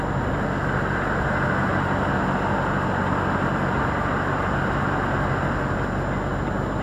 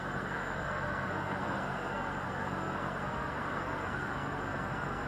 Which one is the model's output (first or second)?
second